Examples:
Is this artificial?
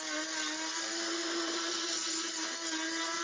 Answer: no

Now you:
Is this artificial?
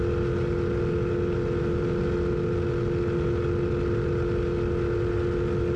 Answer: no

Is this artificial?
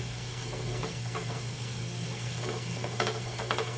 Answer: yes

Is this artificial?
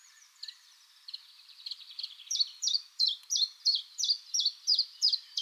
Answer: yes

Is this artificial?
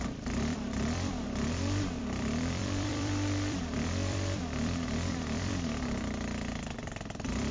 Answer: yes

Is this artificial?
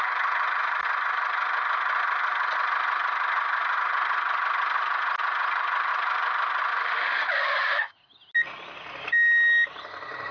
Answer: no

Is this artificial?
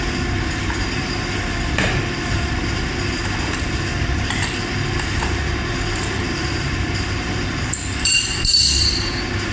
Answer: yes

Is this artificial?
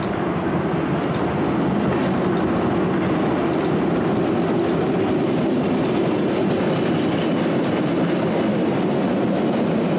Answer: no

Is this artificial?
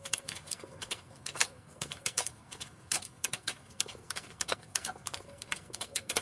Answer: yes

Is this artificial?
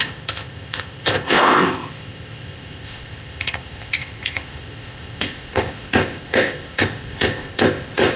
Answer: yes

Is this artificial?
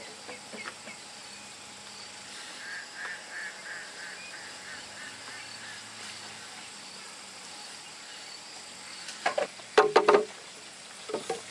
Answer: no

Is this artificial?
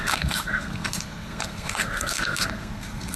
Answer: yes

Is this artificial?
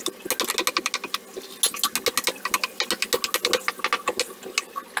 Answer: no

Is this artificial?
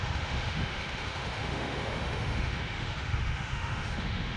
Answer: yes